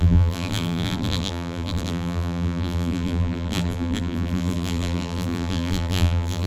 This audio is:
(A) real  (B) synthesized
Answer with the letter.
B